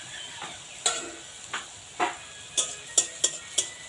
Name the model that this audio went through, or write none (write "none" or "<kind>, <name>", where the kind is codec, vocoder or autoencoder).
none